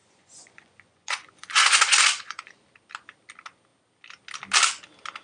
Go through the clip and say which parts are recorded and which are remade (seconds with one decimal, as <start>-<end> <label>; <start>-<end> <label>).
0.0-2.6 remade; 2.6-5.2 recorded